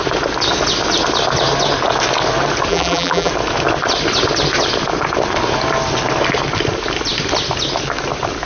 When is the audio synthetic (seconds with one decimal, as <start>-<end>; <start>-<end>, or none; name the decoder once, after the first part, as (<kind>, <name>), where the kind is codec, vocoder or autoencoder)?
2.7-3.3 (vocoder, BigVGAN v2)